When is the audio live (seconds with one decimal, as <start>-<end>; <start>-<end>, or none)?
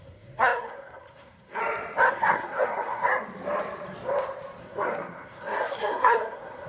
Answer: 1.6-2.1; 3.1-4.6